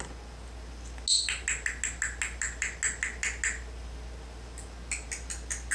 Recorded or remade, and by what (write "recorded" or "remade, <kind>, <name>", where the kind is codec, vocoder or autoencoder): recorded